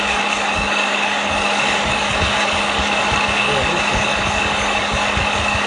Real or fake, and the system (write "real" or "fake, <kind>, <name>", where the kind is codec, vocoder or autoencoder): fake, codec, DAC